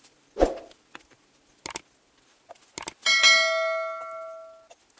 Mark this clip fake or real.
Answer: real